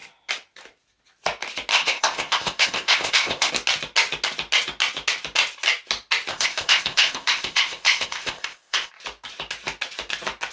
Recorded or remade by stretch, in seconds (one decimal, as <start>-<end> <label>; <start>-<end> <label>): 0.0-1.7 recorded; 1.7-3.5 remade; 3.5-6.3 recorded; 6.3-8.9 remade; 8.9-10.5 recorded